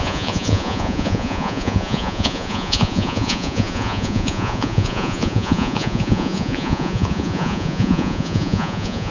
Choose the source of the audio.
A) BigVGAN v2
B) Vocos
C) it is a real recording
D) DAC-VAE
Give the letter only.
B